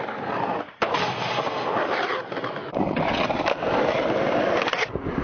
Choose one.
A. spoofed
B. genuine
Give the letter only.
B